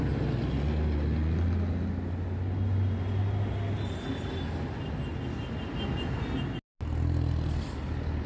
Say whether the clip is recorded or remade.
recorded